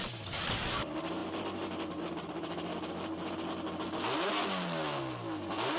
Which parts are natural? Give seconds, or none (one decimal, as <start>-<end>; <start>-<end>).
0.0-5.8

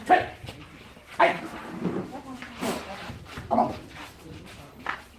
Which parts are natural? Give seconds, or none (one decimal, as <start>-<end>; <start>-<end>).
0.0-1.6; 2.4-5.2

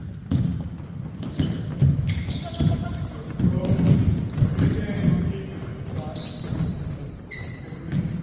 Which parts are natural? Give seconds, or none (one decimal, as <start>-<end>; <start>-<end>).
0.0-1.8; 4.2-8.2